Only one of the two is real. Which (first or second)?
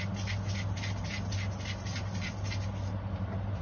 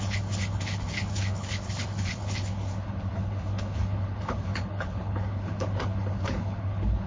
first